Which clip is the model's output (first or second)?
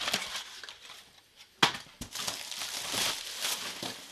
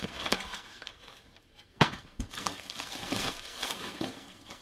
second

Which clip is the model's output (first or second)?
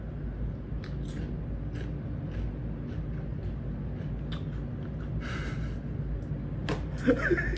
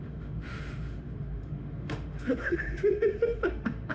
second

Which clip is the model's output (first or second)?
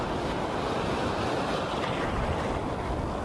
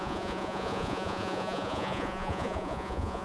second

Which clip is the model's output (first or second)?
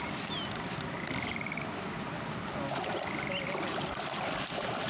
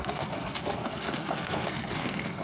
second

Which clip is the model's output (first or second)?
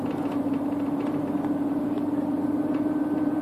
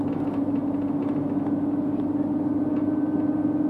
first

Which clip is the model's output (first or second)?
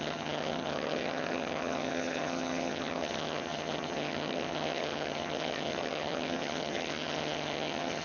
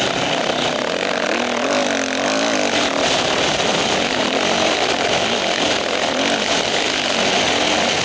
first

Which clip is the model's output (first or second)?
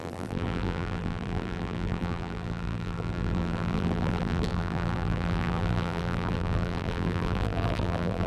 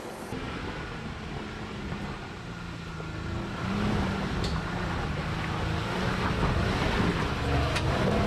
first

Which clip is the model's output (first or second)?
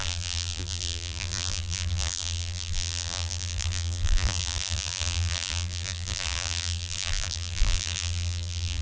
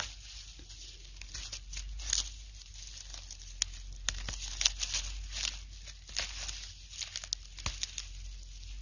first